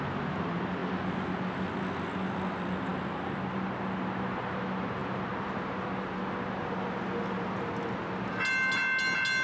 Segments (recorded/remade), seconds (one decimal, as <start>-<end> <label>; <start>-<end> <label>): 0.0-9.4 recorded